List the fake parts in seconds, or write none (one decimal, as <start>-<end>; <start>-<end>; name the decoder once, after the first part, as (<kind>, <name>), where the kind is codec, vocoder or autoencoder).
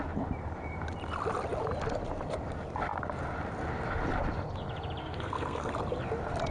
5.0-5.7 (codec, SNAC)